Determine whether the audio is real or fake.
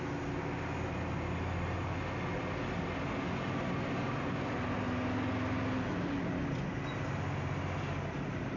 real